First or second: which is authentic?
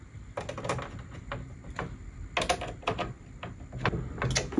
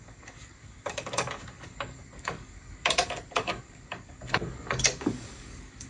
first